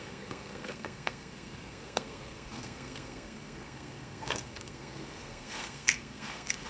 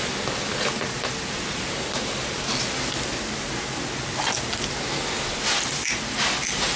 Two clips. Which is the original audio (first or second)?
second